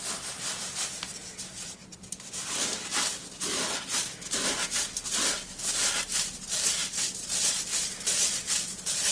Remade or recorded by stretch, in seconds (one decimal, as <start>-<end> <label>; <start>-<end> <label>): 0.0-9.1 recorded